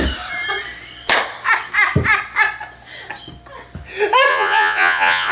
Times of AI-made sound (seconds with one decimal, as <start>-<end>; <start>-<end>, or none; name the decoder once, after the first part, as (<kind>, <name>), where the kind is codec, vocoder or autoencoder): 4.3-5.3 (vocoder, Vocos)

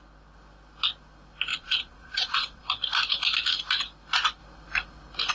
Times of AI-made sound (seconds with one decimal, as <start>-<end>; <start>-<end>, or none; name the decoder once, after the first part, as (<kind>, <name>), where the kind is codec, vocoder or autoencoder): 1.5-2.6 (vocoder, Vocos)

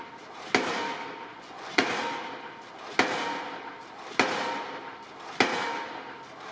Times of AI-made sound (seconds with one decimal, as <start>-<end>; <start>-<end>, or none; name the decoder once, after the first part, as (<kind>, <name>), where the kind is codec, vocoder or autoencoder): 1.3-1.8 (vocoder, Vocos)

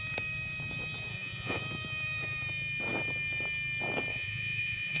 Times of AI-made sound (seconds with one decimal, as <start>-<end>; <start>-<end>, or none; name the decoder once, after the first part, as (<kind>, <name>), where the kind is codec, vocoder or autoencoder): 1.1-1.6 (vocoder, Vocos); 4.1-5.0

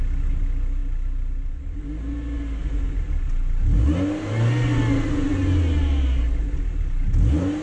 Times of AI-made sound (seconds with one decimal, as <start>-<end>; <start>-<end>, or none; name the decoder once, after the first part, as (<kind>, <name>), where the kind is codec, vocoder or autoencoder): none

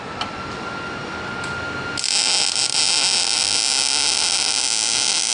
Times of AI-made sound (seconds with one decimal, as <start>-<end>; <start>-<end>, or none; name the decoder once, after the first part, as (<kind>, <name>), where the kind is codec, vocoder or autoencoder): none